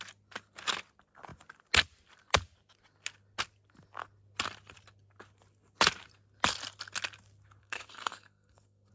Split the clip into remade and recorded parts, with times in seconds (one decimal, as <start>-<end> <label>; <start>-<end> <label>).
0.0-7.6 recorded; 7.6-8.9 remade